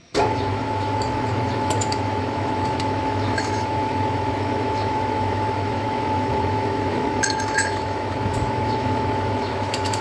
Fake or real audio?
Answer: fake